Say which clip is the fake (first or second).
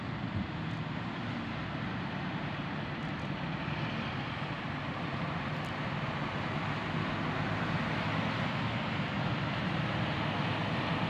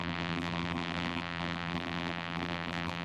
second